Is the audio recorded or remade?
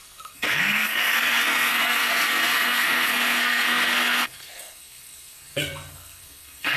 remade